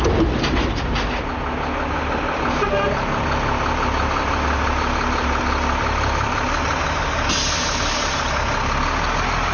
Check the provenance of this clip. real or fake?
real